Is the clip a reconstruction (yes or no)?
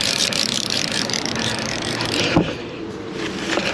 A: yes